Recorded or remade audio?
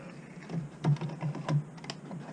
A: recorded